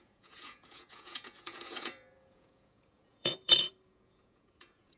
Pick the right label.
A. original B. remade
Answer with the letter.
B